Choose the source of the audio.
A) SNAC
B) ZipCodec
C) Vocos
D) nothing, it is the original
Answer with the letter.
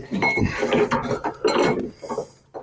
D